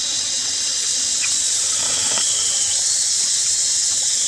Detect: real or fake fake